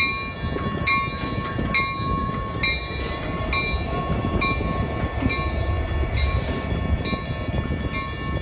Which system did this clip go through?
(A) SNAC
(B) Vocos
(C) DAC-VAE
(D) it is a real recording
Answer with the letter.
D